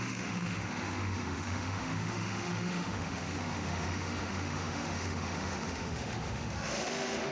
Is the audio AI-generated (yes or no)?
yes